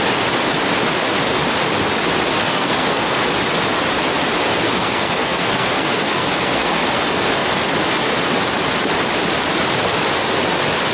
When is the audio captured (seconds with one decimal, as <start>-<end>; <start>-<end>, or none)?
0.0-2.3; 3.2-4.5; 7.0-10.9